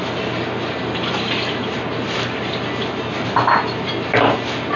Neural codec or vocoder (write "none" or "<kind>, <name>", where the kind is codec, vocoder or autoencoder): none